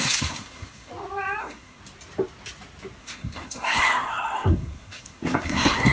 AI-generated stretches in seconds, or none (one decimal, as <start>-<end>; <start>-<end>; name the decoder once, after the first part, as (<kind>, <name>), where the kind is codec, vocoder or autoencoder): 0.0-0.9 (codec, SNAC); 1.4-1.8; 3.0-5.9